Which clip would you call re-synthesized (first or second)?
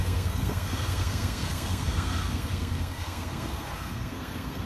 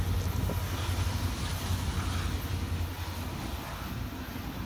first